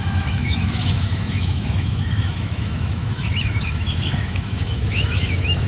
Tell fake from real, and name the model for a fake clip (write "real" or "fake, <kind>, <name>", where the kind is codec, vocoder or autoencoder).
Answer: fake, autoencoder, DAC-VAE